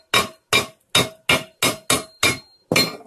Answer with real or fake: real